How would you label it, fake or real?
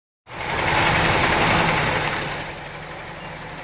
real